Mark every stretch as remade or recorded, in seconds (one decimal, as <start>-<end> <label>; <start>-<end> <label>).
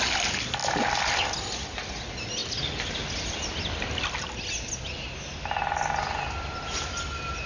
0.0-7.5 recorded